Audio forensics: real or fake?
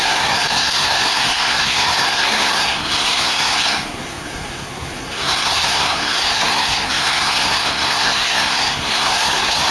fake